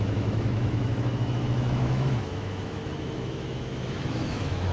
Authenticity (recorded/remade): remade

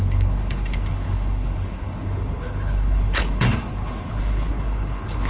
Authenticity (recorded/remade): remade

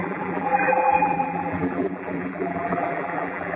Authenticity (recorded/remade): remade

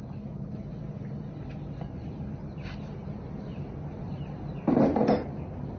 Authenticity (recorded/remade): recorded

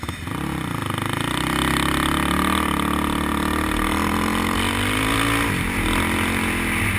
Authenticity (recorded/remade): recorded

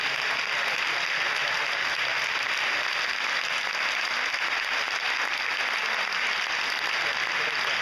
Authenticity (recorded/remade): recorded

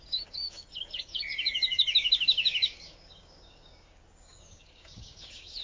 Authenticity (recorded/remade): remade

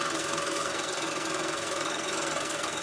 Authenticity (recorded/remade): remade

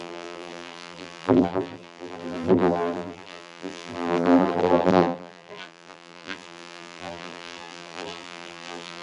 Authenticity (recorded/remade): remade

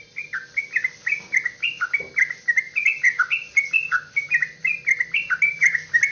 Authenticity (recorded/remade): recorded